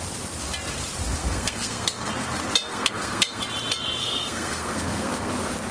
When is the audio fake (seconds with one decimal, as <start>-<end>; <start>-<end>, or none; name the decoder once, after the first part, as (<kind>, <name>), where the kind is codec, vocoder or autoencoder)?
1.2-2.1 (codec, SNAC); 2.7-3.4; 4.0-5.3